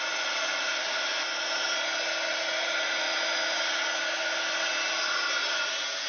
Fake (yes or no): no